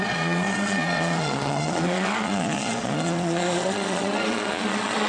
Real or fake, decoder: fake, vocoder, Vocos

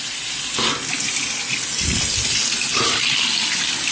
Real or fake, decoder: real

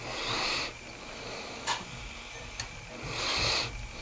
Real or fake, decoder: real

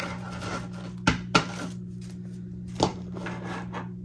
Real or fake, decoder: real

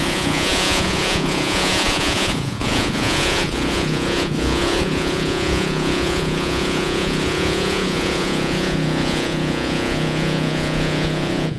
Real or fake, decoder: fake, vocoder, Vocos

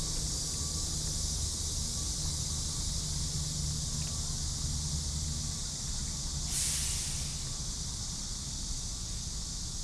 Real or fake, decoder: real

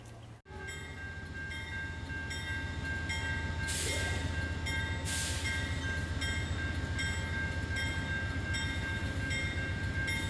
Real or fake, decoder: real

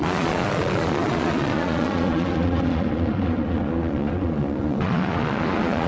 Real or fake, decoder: fake, vocoder, Vocos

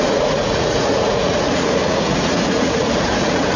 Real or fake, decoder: fake, vocoder, Vocos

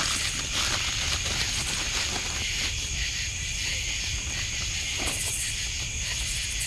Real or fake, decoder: real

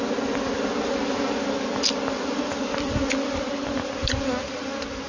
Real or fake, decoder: real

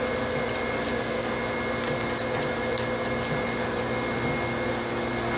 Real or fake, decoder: real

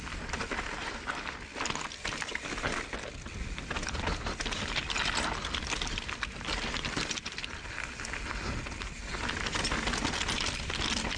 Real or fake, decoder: real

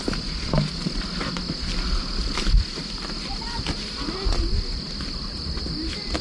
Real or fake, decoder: real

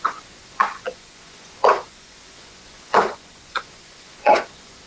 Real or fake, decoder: fake, vocoder, Vocos